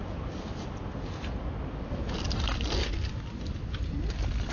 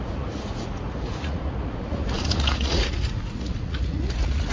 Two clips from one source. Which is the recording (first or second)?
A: first